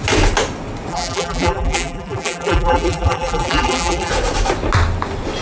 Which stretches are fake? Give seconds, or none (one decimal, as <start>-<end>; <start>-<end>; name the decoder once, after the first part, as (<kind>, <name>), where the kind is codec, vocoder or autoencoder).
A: 0.9-4.1 (vocoder, BigVGAN v2)